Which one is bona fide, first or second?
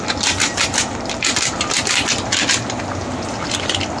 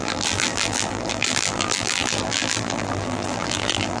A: first